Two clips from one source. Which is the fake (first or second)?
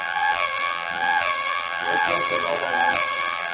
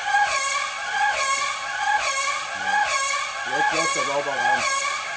first